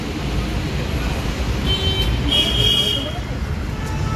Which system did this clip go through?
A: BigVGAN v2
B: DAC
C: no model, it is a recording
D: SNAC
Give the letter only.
C